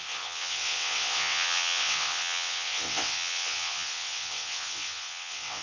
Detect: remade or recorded remade